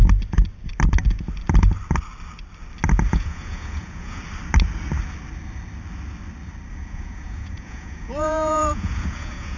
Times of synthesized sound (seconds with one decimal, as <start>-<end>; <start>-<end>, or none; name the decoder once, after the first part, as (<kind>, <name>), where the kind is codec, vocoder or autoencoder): 3.1-4.2 (vocoder, Vocos); 6.7-9.6